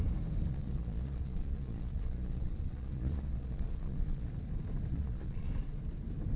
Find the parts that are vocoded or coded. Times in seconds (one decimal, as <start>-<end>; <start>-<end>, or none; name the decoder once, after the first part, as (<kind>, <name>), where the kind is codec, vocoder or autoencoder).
0.5-4.3 (vocoder, Vocos); 4.9-5.5